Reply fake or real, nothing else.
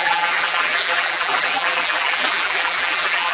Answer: fake